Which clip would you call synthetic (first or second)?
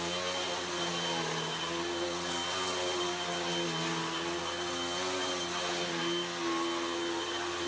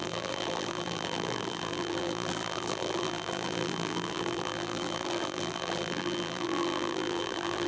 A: second